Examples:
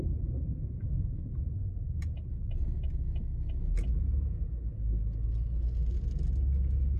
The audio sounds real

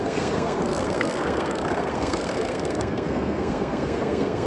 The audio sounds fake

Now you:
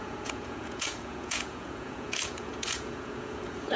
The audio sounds fake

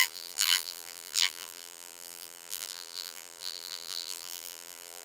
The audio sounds fake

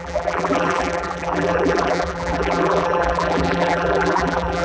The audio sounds fake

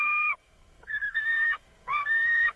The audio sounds fake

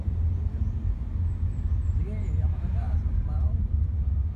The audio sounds real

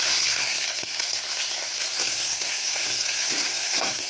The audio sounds fake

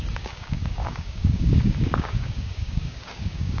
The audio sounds fake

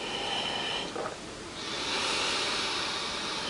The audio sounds real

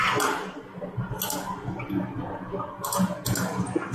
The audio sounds real